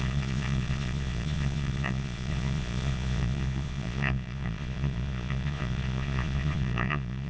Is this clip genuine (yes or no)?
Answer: no